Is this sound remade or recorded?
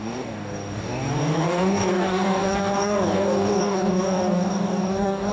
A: remade